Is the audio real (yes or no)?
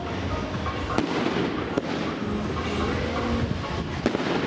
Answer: yes